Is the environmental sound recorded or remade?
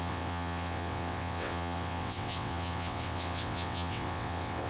remade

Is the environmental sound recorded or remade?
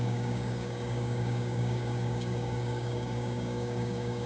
remade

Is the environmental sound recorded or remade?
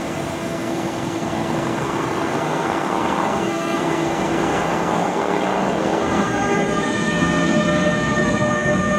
remade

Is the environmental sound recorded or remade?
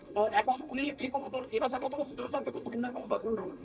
remade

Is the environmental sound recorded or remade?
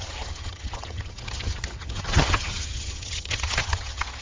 remade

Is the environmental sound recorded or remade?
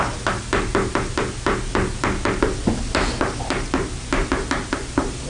recorded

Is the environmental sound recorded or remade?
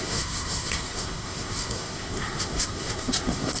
remade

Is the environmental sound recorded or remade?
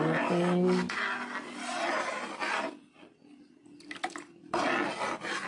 recorded